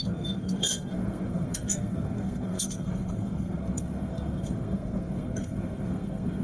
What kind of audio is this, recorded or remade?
remade